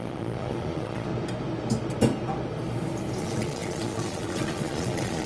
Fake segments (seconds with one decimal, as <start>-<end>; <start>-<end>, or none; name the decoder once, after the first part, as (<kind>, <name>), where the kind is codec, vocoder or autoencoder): 0.0-1.1 (vocoder, Vocos); 3.2-5.3